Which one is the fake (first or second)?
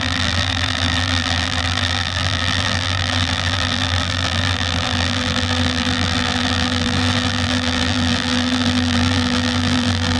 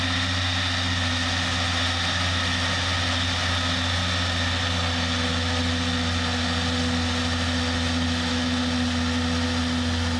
first